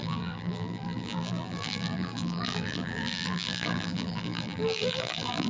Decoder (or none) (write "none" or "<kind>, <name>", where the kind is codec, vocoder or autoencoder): vocoder, BigVGAN v2